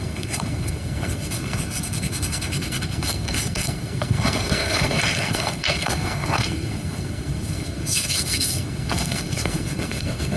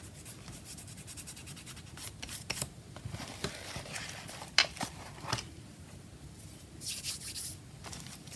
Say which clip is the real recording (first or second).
second